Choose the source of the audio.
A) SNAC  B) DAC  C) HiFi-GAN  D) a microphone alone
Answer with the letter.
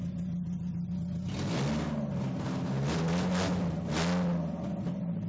D